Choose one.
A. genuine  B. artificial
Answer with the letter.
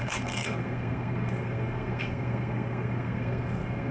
B